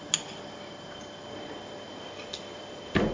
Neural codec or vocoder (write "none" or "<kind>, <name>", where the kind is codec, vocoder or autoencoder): none